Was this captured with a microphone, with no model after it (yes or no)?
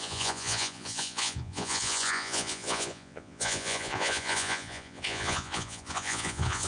no